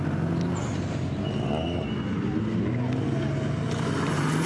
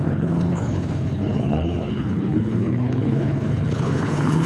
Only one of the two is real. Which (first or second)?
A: first